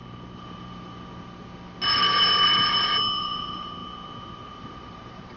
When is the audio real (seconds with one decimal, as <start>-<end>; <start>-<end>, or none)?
0.0-3.2; 3.8-4.6